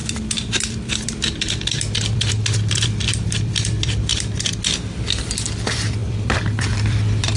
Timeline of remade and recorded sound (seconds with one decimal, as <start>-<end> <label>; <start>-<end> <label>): 0.0-4.1 remade; 4.1-5.2 recorded; 5.2-7.4 remade